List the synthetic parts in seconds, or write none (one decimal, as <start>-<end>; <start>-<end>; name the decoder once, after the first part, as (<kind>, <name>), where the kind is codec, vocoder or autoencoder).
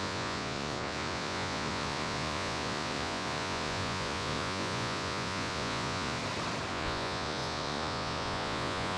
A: 0.0-6.2 (vocoder, Vocos); 6.7-9.0